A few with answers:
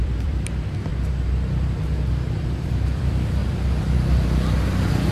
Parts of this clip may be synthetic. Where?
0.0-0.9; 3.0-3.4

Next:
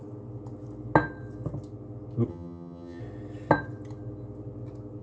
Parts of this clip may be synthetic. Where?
2.3-3.0

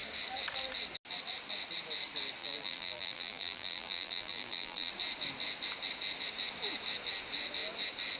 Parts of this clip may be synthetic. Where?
2.4-4.9

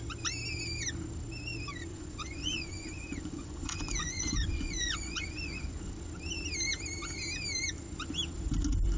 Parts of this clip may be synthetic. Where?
1.9-5.8

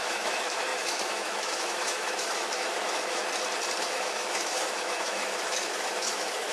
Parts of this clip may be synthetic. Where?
0.0-3.2; 3.8-6.5

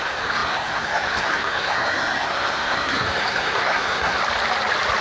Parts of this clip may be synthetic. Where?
0.0-4.2

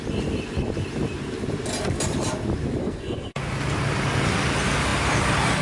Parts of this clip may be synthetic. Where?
2.8-3.4

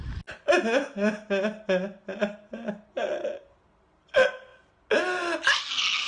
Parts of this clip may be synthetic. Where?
none